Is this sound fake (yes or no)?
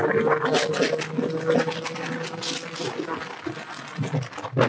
no